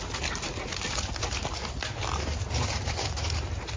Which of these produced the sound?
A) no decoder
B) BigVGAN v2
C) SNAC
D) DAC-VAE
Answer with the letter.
A